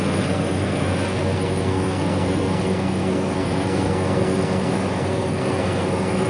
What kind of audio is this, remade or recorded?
remade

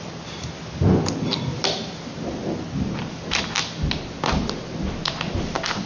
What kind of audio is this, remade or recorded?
recorded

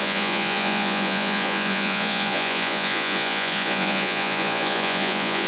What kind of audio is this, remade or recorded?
remade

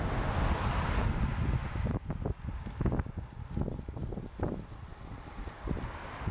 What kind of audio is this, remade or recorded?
recorded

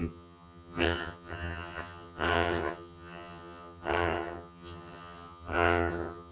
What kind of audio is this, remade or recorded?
remade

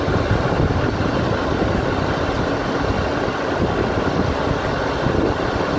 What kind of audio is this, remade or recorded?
recorded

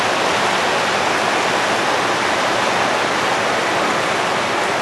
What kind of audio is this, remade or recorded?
recorded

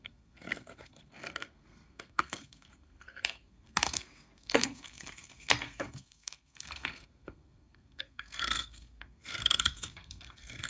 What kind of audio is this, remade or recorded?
remade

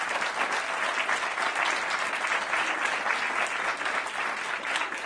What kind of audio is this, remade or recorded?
recorded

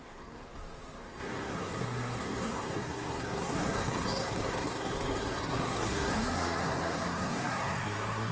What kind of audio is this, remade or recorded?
remade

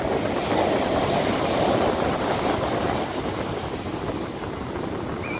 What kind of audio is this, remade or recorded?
recorded